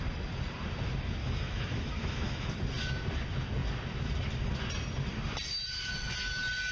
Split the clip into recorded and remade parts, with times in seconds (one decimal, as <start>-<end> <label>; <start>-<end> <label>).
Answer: 0.0-1.2 recorded; 1.2-2.5 remade; 2.5-6.7 recorded